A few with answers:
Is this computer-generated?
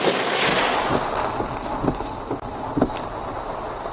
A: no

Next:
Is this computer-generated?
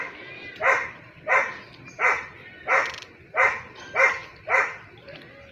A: no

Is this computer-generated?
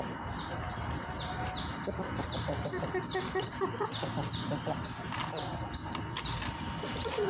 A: no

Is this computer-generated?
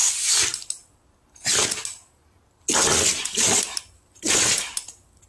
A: no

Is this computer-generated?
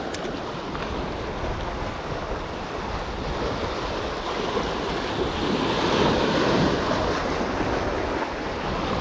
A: no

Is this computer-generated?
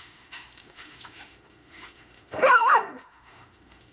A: yes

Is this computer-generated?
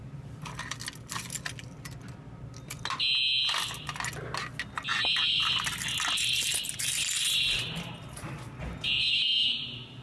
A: no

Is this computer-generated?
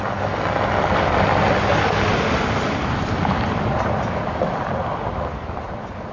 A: no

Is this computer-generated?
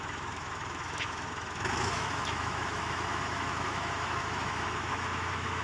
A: yes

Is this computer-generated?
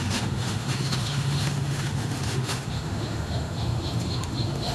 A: yes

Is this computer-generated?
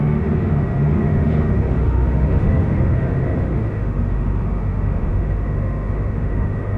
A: yes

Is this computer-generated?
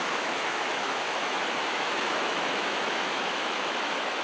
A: yes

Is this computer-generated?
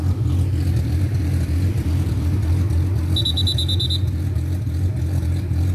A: no